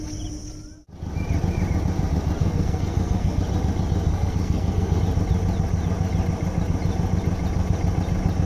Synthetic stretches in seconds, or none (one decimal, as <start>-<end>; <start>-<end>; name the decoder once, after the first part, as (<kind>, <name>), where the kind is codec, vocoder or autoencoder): 2.4-3.4 (codec, SNAC); 4.1-5.0